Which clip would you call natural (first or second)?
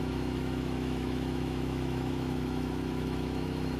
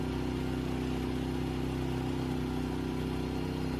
second